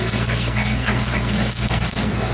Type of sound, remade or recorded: remade